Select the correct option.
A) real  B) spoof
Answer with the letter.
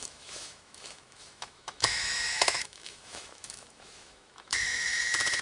B